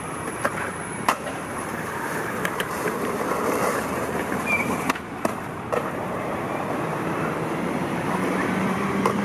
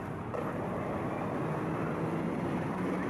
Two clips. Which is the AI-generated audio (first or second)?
first